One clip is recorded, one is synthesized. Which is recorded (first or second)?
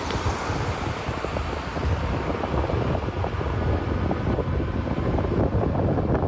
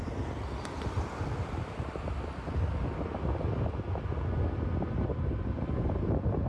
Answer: second